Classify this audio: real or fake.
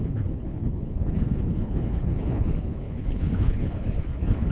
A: fake